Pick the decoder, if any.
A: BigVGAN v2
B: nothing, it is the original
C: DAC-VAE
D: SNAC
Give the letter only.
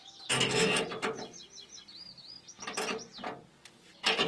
B